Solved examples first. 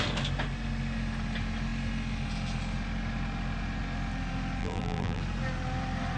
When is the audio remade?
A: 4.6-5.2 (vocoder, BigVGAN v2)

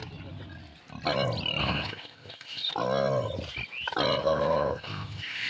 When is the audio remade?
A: 1.6-2.7 (codec, ZipCodec); 4.2-5.5

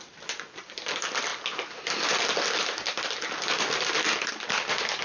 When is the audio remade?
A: none

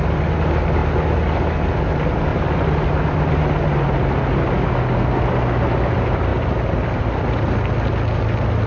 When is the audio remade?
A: 2.3-3.4 (vocoder, BigVGAN v2)

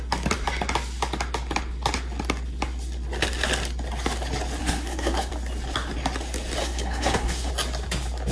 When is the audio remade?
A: 4.6-5.3 (codec, SNAC); 6.6-7.5

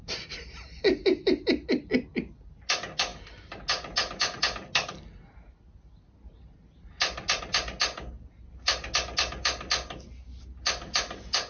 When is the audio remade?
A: none

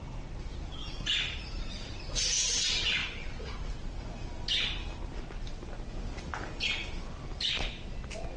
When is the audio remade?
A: 0.8-2.0 (vocoder, BigVGAN v2); 6.8-7.4